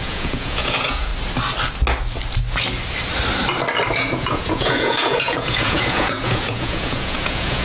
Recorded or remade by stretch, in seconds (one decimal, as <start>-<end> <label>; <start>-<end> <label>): 0.0-1.1 remade; 1.1-3.9 recorded; 3.9-7.6 remade

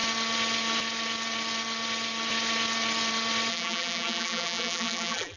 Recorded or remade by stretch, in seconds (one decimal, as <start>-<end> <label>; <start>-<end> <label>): 0.0-3.5 recorded; 3.5-5.4 remade

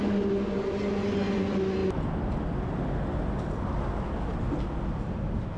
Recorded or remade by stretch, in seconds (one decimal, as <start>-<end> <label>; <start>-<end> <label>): 0.0-5.6 recorded

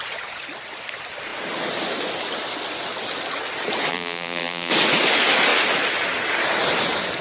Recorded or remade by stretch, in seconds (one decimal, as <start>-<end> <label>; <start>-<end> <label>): 0.0-3.9 recorded; 3.9-4.7 remade; 4.7-7.2 recorded